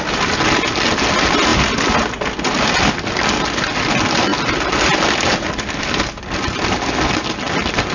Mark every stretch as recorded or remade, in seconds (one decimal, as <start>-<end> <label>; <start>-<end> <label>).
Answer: 0.0-7.9 recorded